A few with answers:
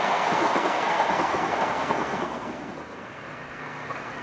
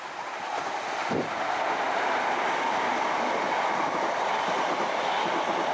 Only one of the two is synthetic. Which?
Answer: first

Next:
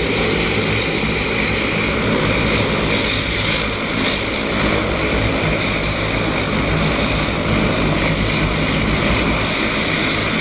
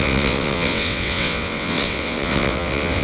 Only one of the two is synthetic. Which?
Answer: second